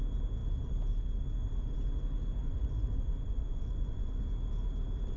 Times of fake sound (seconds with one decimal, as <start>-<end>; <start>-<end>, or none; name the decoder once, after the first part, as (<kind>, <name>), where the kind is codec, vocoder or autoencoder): 2.4-4.2 (vocoder, Vocos)